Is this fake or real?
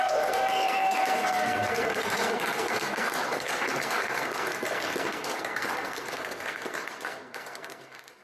fake